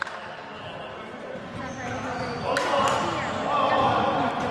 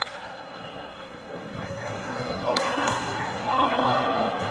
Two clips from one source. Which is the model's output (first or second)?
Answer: second